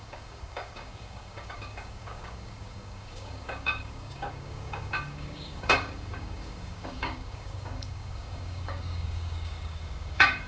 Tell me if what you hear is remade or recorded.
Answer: remade